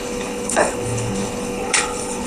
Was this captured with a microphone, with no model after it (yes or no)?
no